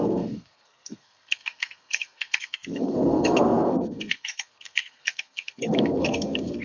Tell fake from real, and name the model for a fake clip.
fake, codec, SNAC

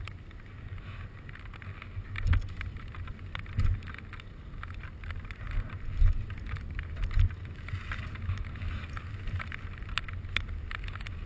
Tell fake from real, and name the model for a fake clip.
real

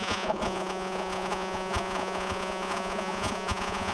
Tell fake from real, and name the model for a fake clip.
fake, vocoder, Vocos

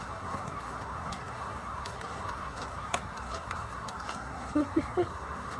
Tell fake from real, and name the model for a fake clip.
fake, codec, SNAC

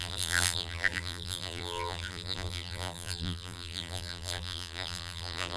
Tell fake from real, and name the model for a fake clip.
fake, vocoder, BigVGAN v2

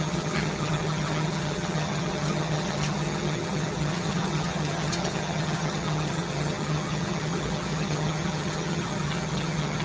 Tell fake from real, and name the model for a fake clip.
fake, vocoder, HiFi-GAN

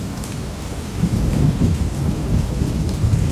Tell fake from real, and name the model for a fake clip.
fake, codec, DAC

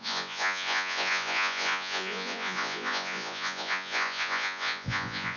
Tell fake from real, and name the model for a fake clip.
fake, vocoder, Vocos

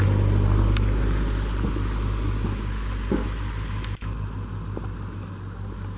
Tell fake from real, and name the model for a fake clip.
real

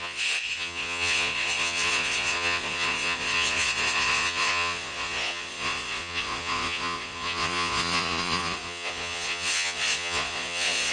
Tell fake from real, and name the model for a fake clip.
fake, vocoder, Vocos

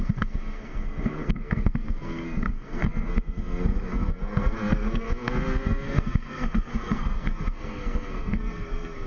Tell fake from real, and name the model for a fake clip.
fake, codec, SNAC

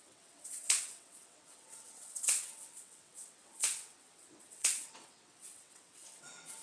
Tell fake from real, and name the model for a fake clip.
fake, vocoder, WaveNeXt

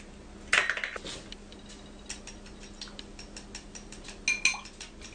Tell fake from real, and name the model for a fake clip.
real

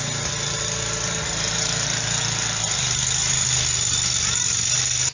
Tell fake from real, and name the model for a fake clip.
real